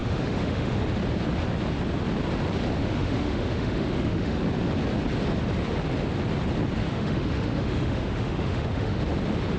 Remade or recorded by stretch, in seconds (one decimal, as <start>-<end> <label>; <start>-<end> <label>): 0.0-0.9 remade; 0.9-2.8 recorded; 2.8-4.4 remade; 4.4-6.8 recorded; 6.8-9.0 remade; 9.0-9.6 recorded